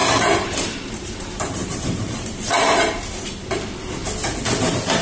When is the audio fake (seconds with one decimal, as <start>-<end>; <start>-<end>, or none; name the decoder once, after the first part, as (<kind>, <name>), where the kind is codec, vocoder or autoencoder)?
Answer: 0.0-4.0 (vocoder, BigVGAN v2); 4.6-5.0